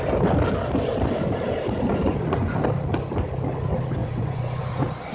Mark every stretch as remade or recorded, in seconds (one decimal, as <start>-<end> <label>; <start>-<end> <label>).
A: 0.0-2.0 recorded; 2.0-2.5 remade; 2.5-4.0 recorded; 4.0-4.6 remade; 4.6-5.1 recorded

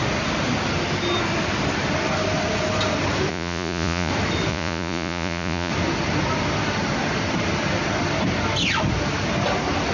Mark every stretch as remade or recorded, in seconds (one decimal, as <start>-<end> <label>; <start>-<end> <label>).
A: 0.0-3.3 recorded; 3.3-4.1 remade; 4.1-4.5 recorded; 4.5-5.7 remade; 5.7-9.9 recorded

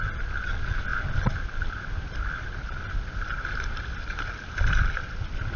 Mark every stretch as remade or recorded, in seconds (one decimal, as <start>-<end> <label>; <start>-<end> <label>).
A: 0.0-5.6 recorded